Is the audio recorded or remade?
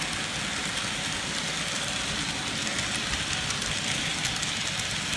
recorded